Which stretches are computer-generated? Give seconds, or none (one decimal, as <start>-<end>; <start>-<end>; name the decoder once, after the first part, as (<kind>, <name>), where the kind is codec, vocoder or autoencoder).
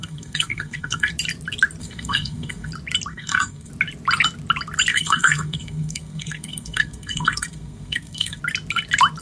0.0-1.1 (codec, SNAC); 1.8-2.7; 3.1-3.7; 4.9-8.4